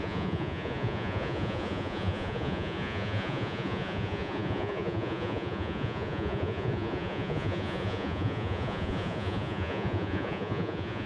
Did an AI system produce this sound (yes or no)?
yes